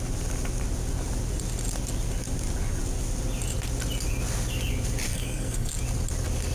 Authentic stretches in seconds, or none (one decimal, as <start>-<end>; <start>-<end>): 0.0-5.1; 5.7-6.5